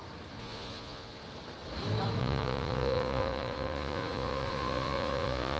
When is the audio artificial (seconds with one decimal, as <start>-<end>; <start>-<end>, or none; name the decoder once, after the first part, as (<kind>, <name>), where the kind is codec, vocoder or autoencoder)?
0.4-1.2 (vocoder, Vocos); 2.2-5.6